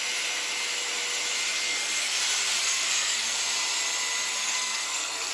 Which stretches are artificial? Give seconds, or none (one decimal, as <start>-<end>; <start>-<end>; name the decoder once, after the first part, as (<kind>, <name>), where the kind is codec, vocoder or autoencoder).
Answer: 1.7-2.2 (codec, SNAC); 2.6-3.4; 4.4-5.3